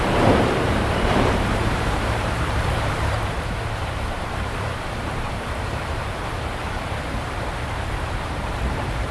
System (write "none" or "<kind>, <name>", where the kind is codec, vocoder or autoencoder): vocoder, BigVGAN v2